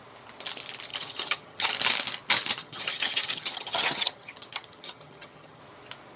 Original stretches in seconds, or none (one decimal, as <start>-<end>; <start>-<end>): 0.0-0.9; 1.7-2.6; 5.6-6.2